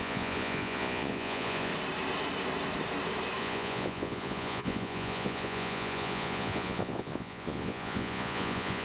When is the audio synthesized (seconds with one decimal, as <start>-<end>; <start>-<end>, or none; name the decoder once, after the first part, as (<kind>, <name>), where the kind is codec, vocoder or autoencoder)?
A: 0.0-1.7 (vocoder, Vocos); 3.4-8.8